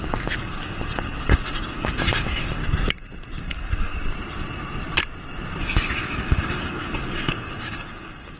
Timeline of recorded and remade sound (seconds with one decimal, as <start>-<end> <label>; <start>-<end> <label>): 0.0-2.6 remade; 2.6-3.4 recorded; 3.4-3.9 remade; 3.9-5.6 recorded; 5.6-8.4 remade